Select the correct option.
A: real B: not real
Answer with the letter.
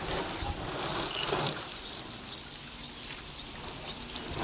A